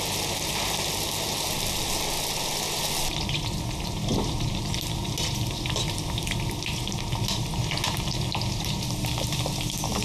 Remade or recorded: recorded